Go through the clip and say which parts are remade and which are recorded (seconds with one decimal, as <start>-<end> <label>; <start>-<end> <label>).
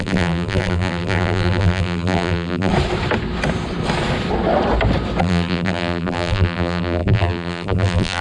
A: 0.0-2.7 remade; 2.7-5.2 recorded; 5.2-8.2 remade